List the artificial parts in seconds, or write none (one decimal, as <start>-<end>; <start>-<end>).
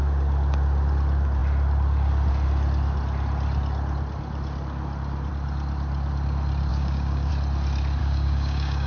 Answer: 6.7-7.3; 8.0-8.9